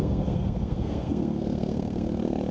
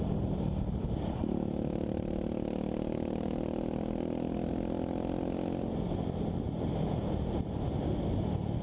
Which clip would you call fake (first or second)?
first